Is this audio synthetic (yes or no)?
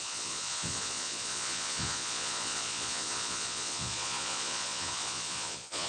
yes